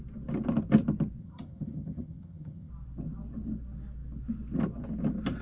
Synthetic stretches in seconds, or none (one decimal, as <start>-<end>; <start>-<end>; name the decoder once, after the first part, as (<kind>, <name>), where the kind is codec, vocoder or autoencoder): 1.2-2.7 (vocoder, HiFi-GAN)